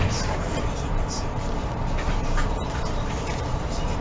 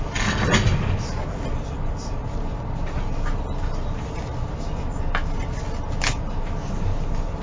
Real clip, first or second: second